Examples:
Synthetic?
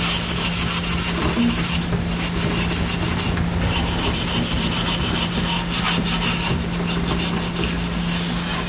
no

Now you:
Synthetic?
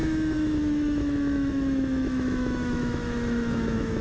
yes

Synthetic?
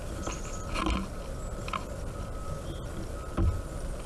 no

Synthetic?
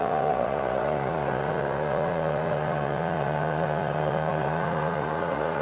yes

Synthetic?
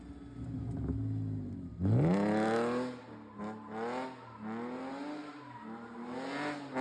no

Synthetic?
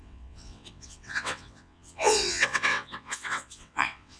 yes